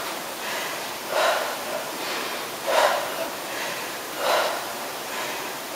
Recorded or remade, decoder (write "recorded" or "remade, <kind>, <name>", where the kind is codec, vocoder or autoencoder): remade, vocoder, BigVGAN v2